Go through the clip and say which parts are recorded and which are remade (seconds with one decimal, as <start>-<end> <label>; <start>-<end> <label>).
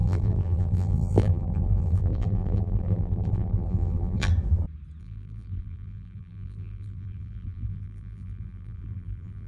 0.0-4.3 remade; 4.3-5.0 recorded; 5.0-9.5 remade